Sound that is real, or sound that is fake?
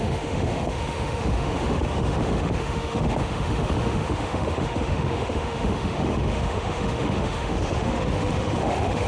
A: fake